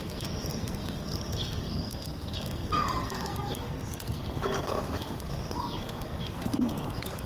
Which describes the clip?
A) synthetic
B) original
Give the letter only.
A